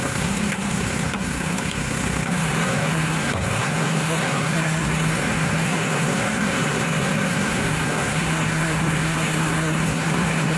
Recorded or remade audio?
remade